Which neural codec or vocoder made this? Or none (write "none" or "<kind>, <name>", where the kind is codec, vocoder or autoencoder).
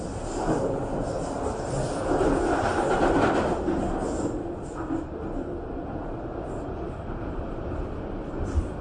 none